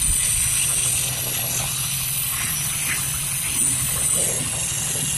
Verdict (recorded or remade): recorded